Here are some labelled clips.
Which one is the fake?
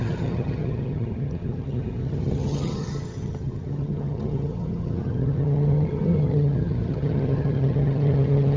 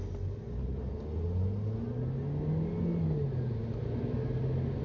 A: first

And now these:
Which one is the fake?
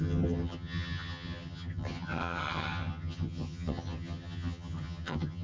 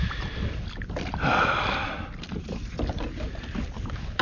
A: first